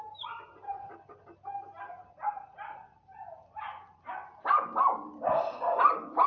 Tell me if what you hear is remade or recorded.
recorded